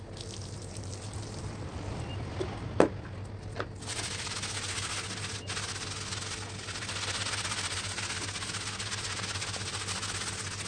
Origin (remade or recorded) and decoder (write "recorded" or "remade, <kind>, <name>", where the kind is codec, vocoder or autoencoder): recorded